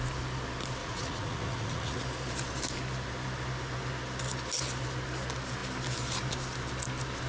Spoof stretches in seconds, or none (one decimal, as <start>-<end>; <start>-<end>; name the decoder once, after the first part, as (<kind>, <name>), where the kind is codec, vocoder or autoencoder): 0.8-2.0 (vocoder, Vocos)